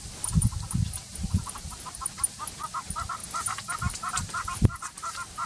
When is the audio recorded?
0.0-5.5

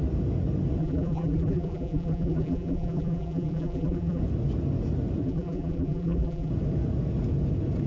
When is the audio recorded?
0.0-0.8; 4.2-5.2; 6.5-7.9